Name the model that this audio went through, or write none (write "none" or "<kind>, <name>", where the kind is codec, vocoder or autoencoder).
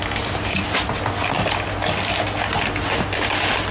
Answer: none